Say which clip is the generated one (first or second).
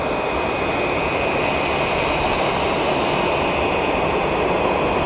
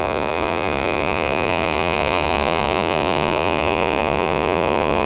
second